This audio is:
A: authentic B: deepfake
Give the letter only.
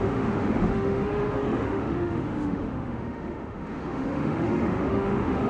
B